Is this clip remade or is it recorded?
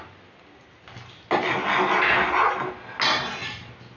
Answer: recorded